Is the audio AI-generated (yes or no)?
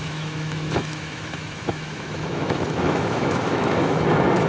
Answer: yes